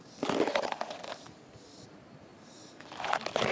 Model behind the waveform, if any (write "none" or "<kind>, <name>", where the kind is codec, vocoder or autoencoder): none